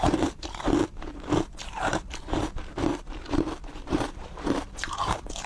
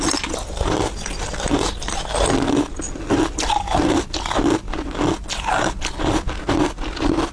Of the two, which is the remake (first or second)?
first